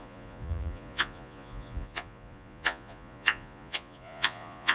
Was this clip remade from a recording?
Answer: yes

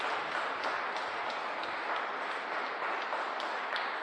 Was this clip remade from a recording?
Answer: no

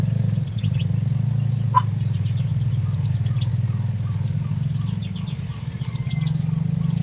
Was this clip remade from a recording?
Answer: no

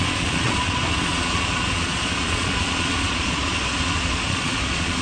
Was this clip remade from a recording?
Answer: yes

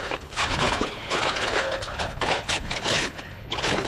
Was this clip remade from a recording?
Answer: yes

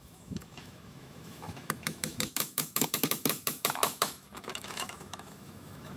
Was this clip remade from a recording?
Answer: yes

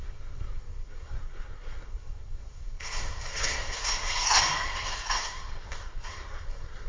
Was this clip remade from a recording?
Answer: yes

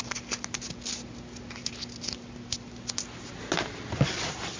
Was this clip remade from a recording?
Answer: no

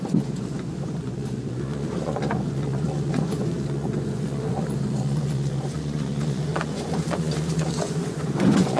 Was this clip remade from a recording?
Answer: yes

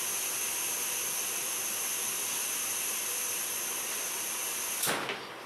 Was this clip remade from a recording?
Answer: no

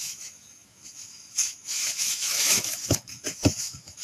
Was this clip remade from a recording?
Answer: yes